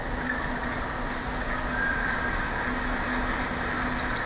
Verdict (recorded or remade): recorded